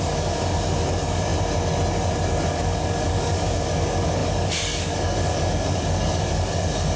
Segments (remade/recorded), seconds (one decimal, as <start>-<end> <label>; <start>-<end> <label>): 0.0-1.3 remade; 1.3-2.5 recorded; 2.5-7.0 remade

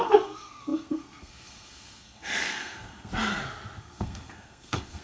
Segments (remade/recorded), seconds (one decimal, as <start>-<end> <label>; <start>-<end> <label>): 0.0-3.1 remade; 3.1-3.8 recorded; 3.8-5.0 remade

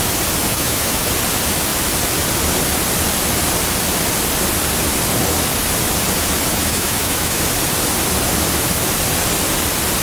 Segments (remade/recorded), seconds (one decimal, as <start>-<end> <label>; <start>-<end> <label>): 0.0-0.5 recorded; 0.5-1.1 remade; 1.1-6.5 recorded; 6.5-7.4 remade; 7.4-10.0 recorded

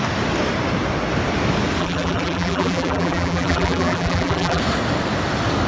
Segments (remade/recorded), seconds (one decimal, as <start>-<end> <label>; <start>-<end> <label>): 0.0-1.8 recorded; 1.8-4.6 remade; 4.6-5.7 recorded

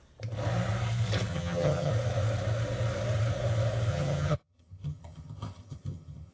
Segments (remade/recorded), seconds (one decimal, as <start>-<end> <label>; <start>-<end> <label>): 0.0-1.3 recorded; 1.3-1.9 remade; 1.9-3.9 recorded; 3.9-6.3 remade

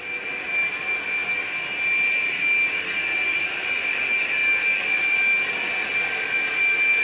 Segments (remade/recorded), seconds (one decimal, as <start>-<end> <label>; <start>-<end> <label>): 0.0-7.0 recorded